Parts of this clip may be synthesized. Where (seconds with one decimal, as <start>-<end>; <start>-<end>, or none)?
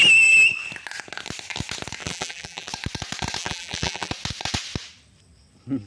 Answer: 2.0-2.7; 3.4-4.1